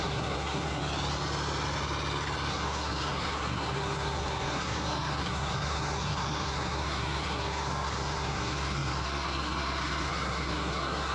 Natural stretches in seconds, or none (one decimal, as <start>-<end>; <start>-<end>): 0.8-2.5